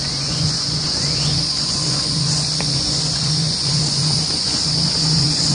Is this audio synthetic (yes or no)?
yes